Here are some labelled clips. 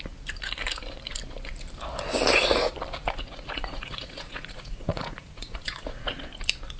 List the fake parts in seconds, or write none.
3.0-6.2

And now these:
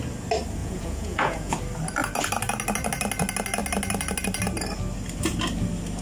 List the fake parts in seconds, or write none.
0.6-1.5

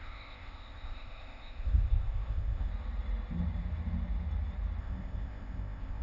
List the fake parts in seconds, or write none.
0.0-2.7; 4.8-6.0

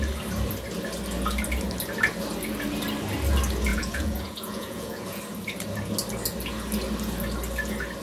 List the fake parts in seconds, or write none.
3.7-5.2

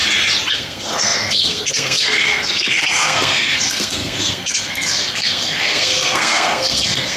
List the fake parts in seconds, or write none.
0.5-7.2

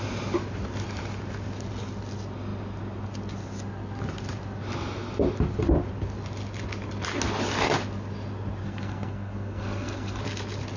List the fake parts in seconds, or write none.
8.6-10.2